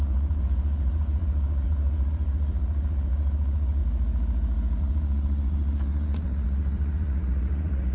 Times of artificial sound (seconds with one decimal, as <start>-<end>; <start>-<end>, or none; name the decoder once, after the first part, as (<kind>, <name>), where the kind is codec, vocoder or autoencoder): 0.0-3.8 (vocoder, Vocos); 4.8-7.9